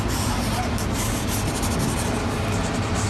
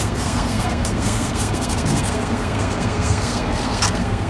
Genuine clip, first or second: first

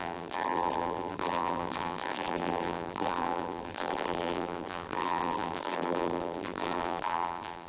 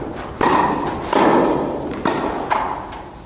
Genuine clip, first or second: second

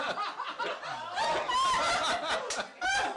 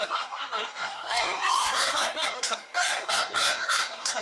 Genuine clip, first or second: first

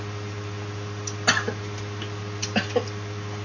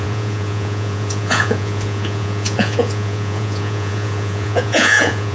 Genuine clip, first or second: first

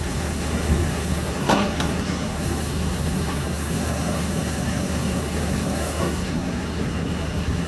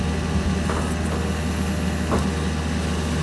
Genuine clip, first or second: second